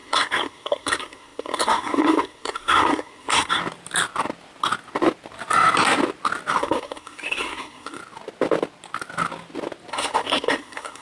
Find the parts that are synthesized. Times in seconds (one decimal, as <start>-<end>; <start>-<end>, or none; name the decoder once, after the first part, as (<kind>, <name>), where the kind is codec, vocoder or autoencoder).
0.0-3.6 (codec, SNAC); 6.6-8.0; 9.9-11.0